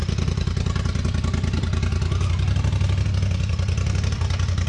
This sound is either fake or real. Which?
real